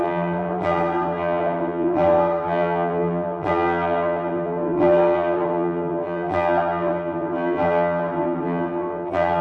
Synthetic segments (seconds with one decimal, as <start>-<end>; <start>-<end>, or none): 0.0-9.4